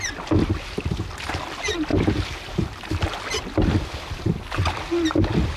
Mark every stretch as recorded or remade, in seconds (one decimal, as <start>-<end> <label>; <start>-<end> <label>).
0.0-5.6 recorded